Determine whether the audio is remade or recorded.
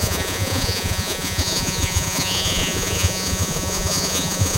remade